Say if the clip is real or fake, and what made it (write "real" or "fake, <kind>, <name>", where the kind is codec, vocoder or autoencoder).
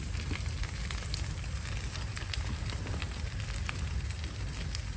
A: real